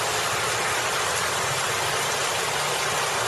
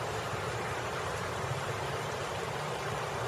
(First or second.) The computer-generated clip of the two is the second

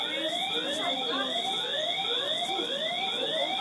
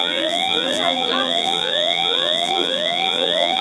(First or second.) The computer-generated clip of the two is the second